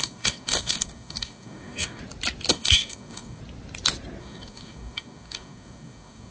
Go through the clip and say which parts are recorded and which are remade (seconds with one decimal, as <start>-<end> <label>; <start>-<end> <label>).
0.0-2.0 remade; 2.0-2.5 recorded; 2.5-3.4 remade; 3.4-4.2 recorded; 4.2-6.3 remade